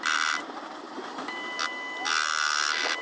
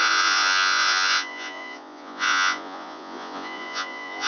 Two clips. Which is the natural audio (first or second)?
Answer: first